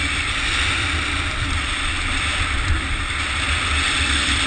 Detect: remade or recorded recorded